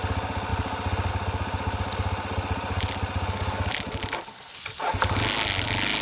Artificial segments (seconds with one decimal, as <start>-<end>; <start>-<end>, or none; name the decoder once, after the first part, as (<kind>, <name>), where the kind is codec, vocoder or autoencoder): none